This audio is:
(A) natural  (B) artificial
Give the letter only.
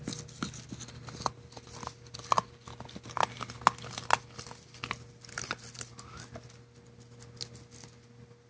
A